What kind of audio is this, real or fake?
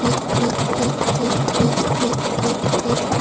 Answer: fake